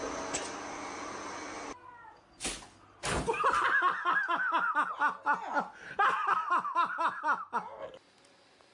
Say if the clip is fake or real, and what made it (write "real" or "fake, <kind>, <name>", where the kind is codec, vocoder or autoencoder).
real